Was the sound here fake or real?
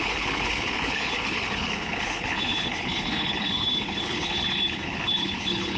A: fake